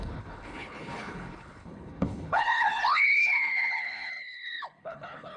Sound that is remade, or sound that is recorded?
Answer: remade